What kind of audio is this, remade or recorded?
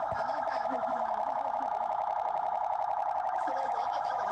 remade